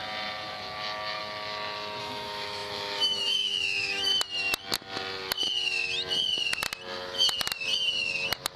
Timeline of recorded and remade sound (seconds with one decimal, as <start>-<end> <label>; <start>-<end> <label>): 0.0-2.0 recorded; 2.0-4.1 remade; 4.1-8.6 recorded

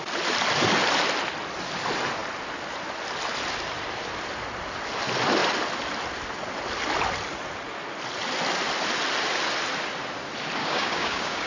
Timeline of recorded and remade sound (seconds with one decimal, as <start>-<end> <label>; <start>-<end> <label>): 0.0-10.6 recorded; 10.6-11.5 remade

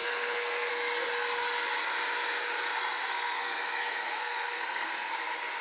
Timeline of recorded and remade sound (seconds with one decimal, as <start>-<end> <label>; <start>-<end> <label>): 0.0-0.7 remade; 0.7-3.1 recorded; 3.1-5.1 remade; 5.1-5.6 recorded

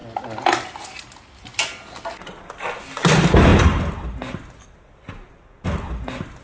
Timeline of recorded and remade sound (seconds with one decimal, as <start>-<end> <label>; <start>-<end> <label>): 0.0-6.4 recorded

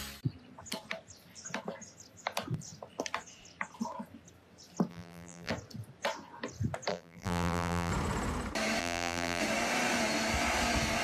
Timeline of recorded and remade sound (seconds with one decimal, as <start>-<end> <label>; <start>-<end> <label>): 0.0-4.9 recorded; 4.9-5.5 remade; 5.5-6.9 recorded; 6.9-7.9 remade; 7.9-8.8 recorded; 8.8-9.4 remade; 9.4-11.0 recorded